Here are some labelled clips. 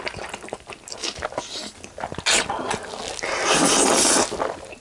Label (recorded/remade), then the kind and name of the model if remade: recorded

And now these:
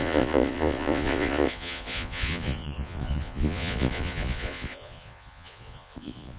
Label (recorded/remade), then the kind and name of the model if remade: remade, vocoder, Vocos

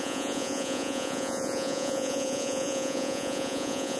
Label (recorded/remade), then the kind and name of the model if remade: remade, vocoder, Vocos